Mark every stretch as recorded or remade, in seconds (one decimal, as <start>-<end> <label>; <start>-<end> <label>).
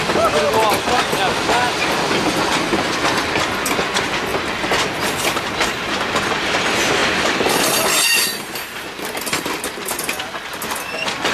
0.0-11.3 recorded